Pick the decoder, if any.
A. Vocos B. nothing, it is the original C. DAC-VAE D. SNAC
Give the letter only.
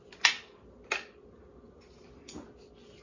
B